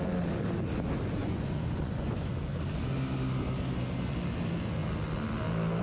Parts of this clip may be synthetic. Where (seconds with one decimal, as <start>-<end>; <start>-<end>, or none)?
1.2-2.3